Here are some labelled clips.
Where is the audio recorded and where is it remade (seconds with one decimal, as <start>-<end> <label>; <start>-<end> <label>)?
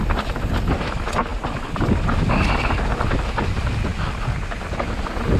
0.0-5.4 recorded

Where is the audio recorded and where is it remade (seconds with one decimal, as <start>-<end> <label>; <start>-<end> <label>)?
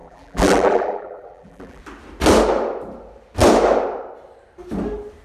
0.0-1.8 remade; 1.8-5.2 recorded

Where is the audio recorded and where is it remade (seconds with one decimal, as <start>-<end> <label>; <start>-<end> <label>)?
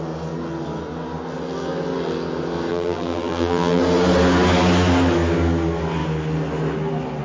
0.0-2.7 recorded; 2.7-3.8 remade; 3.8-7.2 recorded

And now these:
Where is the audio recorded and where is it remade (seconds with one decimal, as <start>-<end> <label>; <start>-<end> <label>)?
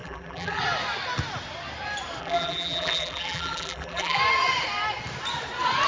0.0-0.6 remade; 0.6-2.2 recorded; 2.2-4.2 remade; 4.2-5.9 recorded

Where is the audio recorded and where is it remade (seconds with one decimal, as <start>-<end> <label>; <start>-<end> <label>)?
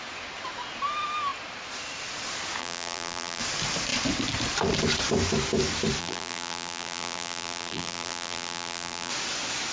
0.0-2.6 recorded; 2.6-3.4 remade; 3.4-6.0 recorded; 6.0-9.1 remade; 9.1-9.7 recorded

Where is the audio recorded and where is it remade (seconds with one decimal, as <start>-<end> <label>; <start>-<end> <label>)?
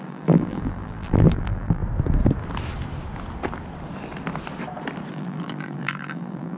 0.0-1.8 remade; 1.8-5.1 recorded; 5.1-6.6 remade